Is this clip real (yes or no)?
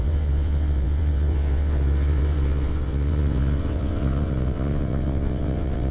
no